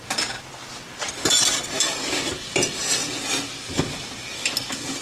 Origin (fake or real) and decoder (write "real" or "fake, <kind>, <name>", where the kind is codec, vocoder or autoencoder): real